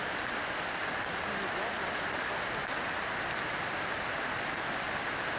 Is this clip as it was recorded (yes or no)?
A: no